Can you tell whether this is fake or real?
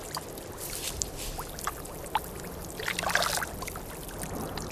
real